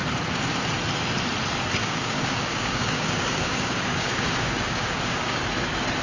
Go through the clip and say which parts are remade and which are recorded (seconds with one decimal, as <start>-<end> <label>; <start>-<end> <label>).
0.0-1.8 recorded; 1.8-5.4 remade; 5.4-6.0 recorded

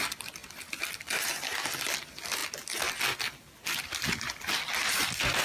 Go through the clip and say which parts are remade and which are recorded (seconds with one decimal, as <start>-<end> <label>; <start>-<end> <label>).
0.0-5.4 recorded

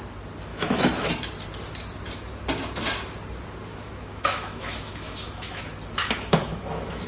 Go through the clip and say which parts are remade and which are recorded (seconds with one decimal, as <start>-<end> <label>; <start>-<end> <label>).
0.0-0.5 recorded; 0.5-1.1 remade; 1.1-3.7 recorded; 3.7-5.6 remade; 5.6-6.0 recorded; 6.0-7.1 remade

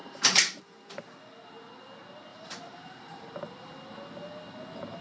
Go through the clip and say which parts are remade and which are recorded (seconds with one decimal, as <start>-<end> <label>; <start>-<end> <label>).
0.0-0.6 remade; 0.6-2.3 recorded; 2.3-3.3 remade; 3.3-5.0 recorded

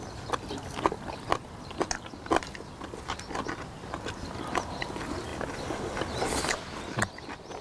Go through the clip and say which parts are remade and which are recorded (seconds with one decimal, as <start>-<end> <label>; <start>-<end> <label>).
0.0-7.6 recorded